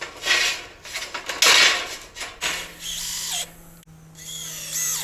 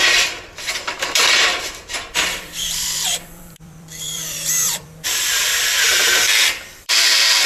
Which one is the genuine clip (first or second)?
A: first